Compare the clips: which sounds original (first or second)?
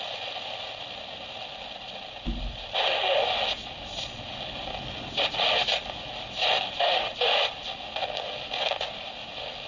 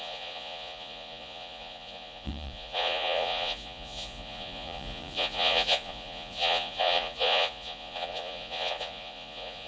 first